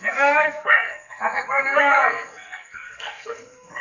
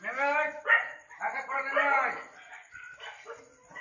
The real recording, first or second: second